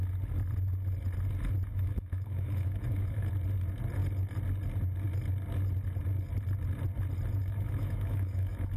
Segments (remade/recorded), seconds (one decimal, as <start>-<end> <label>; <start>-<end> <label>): 0.0-1.7 recorded; 1.7-3.3 remade; 3.3-7.4 recorded; 7.4-8.8 remade